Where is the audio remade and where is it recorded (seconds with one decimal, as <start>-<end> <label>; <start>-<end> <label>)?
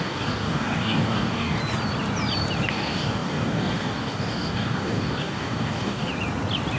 0.0-1.6 remade; 1.6-2.7 recorded; 2.7-6.1 remade; 6.1-6.8 recorded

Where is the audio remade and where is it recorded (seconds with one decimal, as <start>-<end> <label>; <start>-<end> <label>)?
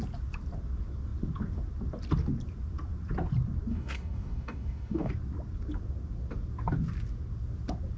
0.0-3.7 recorded; 3.7-5.1 remade; 5.1-8.0 recorded